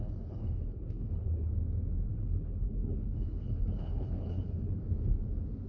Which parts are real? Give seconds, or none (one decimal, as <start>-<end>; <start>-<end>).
0.0-0.4; 1.5-2.1; 4.8-5.7